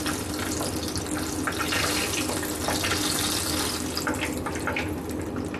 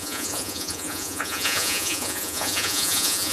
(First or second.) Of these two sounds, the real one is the first